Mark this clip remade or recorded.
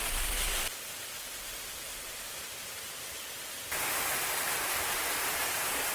recorded